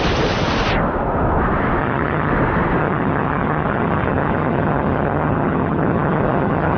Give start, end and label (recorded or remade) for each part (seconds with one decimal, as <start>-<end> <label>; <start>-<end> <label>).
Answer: 0.0-1.8 recorded; 1.8-2.3 remade; 2.3-2.8 recorded; 2.8-6.8 remade

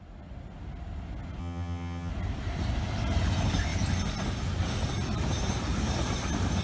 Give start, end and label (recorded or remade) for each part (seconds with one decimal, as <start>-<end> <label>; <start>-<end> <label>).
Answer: 0.0-1.4 recorded; 1.4-2.1 remade; 2.1-6.6 recorded

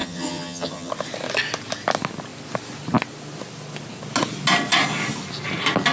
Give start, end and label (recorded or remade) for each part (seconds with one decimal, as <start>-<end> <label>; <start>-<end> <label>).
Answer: 0.0-0.9 remade; 0.9-5.9 recorded

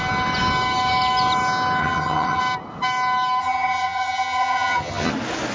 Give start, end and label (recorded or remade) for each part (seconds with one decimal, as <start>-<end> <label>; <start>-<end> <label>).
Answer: 0.0-1.8 recorded; 1.8-2.4 remade; 2.4-3.4 recorded; 3.4-5.1 remade; 5.1-5.5 recorded

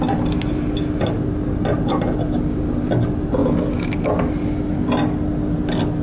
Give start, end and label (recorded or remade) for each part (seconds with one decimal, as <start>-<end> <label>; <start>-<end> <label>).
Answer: 0.0-6.0 recorded

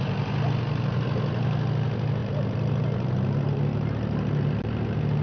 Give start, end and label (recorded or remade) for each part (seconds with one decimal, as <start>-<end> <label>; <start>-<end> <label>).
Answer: 0.0-5.2 recorded

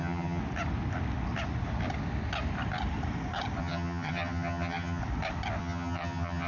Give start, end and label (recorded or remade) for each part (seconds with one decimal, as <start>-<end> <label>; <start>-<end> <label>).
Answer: 0.0-0.4 remade; 0.4-3.6 recorded; 3.6-5.0 remade; 5.0-5.6 recorded; 5.6-6.5 remade